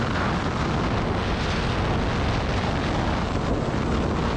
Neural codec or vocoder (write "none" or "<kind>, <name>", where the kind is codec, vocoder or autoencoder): none